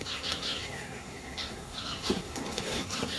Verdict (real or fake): fake